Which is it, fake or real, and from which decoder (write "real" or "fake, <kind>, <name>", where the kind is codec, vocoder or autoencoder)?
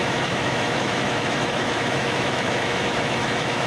fake, autoencoder, DAC-VAE